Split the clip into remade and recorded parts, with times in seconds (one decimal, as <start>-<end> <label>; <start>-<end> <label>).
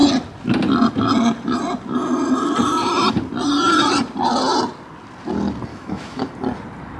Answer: 0.0-5.7 recorded; 5.7-6.3 remade; 6.3-7.0 recorded